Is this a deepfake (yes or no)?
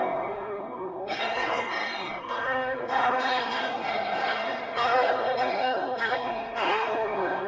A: yes